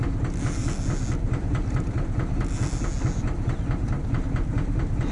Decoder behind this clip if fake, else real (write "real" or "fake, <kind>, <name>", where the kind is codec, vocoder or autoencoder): real